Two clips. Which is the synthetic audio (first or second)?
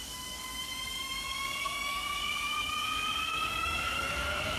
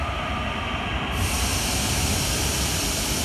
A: first